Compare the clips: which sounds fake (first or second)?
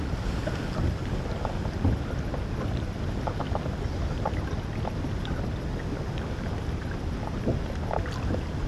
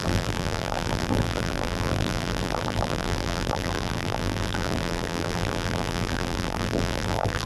second